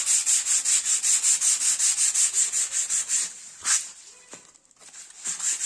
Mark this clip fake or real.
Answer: real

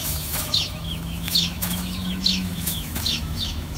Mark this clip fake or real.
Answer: fake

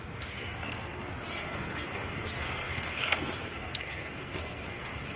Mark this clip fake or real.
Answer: fake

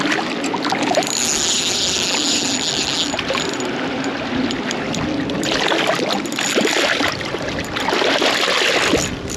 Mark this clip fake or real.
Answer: real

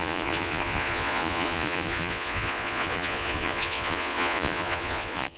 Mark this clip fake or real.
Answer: fake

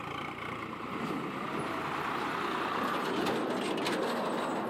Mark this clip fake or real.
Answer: real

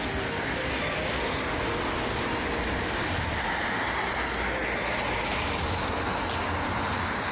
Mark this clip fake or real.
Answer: real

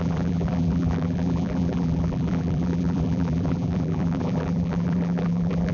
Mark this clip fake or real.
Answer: fake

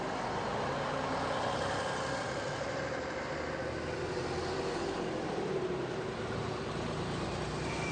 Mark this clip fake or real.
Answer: real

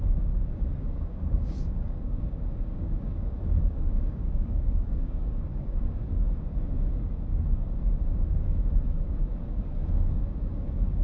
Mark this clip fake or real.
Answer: fake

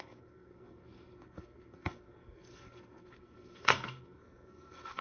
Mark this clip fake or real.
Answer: fake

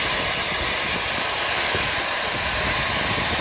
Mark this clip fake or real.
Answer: real